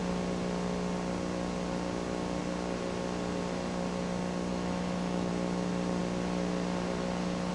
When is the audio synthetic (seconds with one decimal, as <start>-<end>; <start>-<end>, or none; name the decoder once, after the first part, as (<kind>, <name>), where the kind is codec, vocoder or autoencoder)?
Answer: 4.5-5.3 (autoencoder, DAC-VAE)